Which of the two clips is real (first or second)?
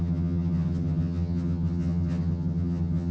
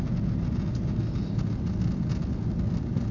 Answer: second